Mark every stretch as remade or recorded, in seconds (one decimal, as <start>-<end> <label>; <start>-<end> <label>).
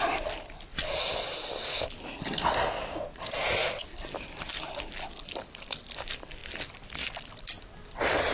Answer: 0.0-3.9 recorded; 3.9-4.7 remade; 4.7-8.3 recorded